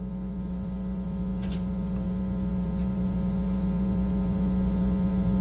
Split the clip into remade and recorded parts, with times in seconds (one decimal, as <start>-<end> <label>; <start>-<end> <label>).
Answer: 0.0-5.4 remade